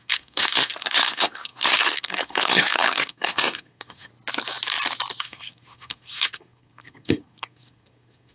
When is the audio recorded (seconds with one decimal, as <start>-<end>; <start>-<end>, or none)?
4.1-5.2